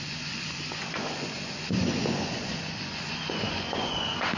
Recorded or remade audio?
remade